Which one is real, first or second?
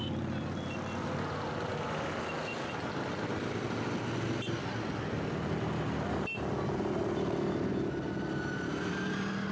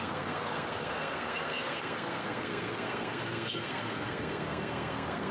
first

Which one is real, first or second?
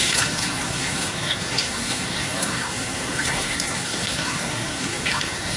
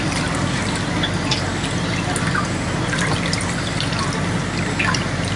second